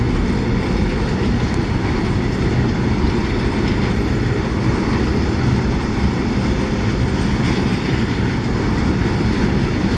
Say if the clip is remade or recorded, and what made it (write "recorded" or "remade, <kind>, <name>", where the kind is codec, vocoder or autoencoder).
recorded